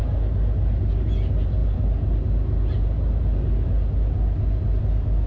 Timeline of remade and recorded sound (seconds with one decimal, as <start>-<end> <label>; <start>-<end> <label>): 0.0-5.3 recorded